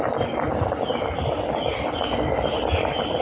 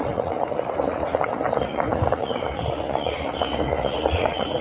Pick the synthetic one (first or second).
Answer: second